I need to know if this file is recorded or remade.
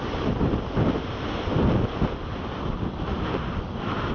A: recorded